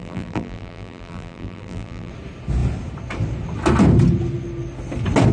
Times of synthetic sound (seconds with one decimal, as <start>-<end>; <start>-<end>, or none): 0.0-2.1